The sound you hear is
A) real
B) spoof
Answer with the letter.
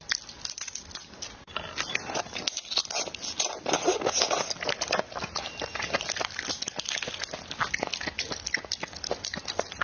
A